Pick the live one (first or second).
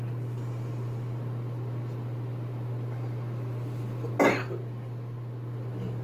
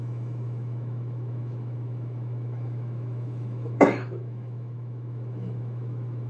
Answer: first